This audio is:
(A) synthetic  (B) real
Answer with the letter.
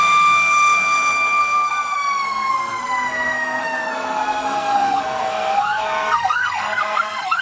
A